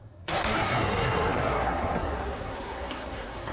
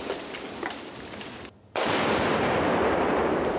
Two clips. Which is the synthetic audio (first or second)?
first